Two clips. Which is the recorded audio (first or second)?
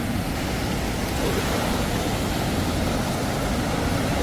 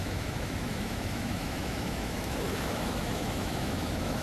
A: first